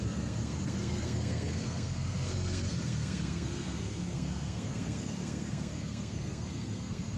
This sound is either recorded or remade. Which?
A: remade